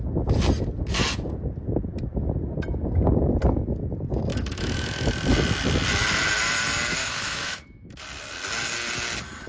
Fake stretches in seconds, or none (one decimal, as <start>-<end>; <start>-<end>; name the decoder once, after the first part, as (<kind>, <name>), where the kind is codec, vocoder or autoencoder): 4.3-5.1 (autoencoder, DAC-VAE); 7.0-8.0